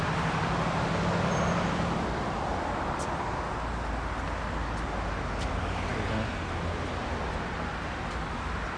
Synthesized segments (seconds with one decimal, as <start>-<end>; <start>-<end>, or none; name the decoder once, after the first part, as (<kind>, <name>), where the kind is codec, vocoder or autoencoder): none